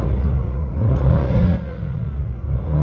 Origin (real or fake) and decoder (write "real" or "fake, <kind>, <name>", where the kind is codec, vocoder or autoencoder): fake, vocoder, Vocos